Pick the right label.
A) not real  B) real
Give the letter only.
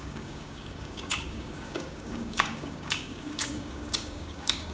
A